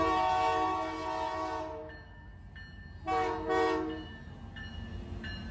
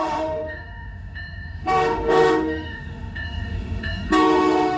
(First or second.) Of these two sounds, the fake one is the second